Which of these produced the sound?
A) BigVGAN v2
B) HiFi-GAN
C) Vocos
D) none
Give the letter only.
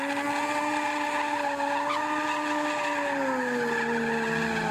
D